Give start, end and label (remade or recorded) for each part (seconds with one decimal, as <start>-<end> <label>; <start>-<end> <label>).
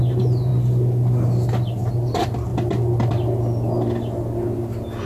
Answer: 0.0-5.1 recorded